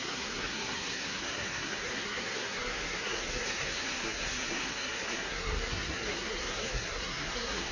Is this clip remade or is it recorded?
remade